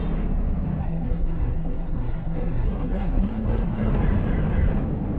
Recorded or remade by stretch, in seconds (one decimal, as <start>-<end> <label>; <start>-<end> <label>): 0.0-0.8 recorded; 0.8-3.9 remade; 3.9-5.2 recorded